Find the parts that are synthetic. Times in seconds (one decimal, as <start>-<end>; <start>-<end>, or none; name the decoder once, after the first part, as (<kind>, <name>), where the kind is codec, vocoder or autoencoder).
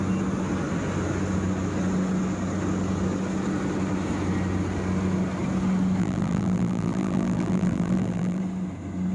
6.0-8.4 (vocoder, BigVGAN v2)